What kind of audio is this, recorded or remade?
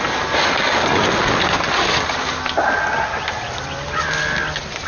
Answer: recorded